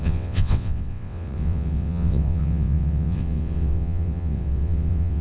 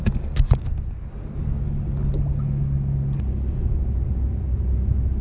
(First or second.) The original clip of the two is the second